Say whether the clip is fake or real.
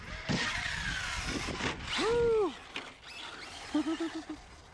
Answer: real